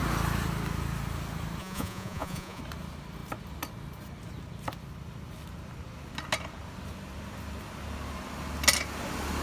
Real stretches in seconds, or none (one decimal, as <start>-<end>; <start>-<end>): 0.0-1.6; 2.6-9.4